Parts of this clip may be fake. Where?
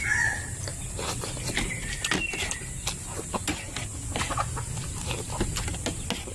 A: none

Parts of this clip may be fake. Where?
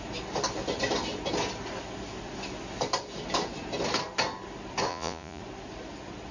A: 4.9-5.4 (vocoder, Vocos)